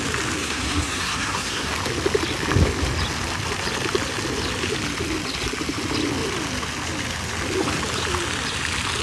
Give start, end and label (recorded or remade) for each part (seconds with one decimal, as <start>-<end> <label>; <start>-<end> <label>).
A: 0.0-0.4 recorded; 0.4-1.7 remade; 1.7-9.0 recorded